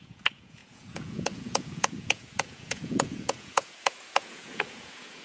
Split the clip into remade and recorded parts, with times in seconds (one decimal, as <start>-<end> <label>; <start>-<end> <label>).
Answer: 0.0-5.2 remade